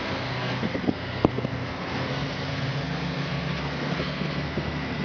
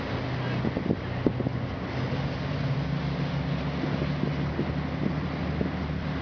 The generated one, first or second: first